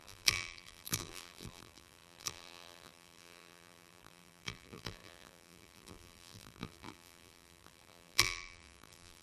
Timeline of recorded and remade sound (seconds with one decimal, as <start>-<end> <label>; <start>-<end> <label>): 0.0-9.2 remade

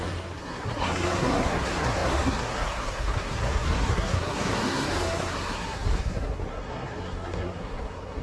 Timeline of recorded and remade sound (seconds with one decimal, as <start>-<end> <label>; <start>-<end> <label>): 0.0-8.2 remade

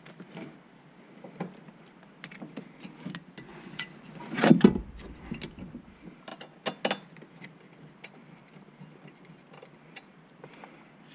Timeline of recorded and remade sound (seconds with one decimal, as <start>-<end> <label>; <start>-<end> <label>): 0.0-3.5 recorded; 3.5-4.5 remade; 4.5-11.1 recorded

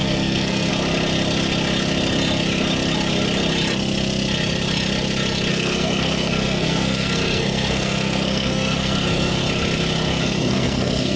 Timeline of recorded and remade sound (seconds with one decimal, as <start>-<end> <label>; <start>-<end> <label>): 0.0-0.7 remade; 0.7-5.5 recorded; 5.5-9.4 remade; 9.4-10.1 recorded; 10.1-11.2 remade

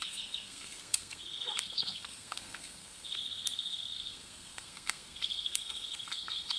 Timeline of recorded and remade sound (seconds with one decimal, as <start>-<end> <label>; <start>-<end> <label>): 0.0-6.6 remade